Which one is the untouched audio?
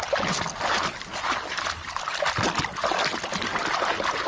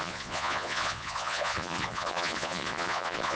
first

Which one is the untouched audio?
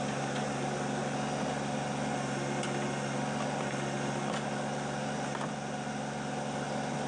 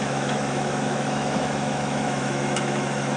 first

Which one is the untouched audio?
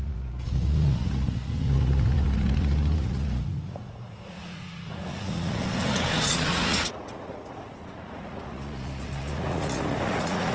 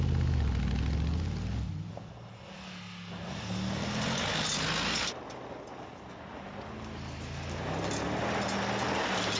second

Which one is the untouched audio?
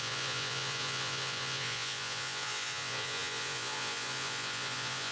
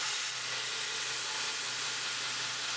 second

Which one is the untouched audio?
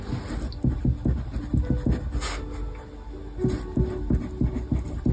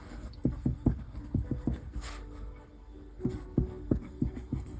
first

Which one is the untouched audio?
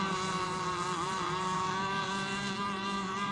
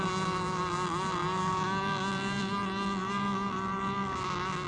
second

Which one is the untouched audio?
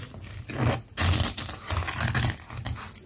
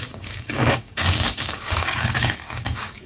first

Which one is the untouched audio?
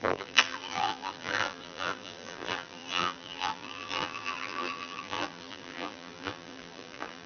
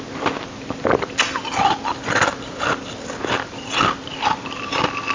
second